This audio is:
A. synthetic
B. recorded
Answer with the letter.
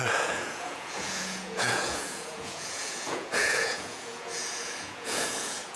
A